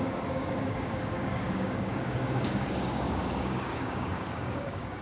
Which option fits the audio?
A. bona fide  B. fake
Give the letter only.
B